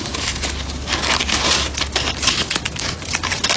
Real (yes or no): yes